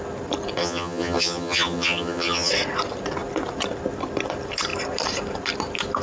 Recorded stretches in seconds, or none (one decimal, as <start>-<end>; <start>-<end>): 0.0-0.6; 2.5-6.0